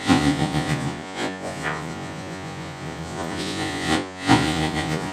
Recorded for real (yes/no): no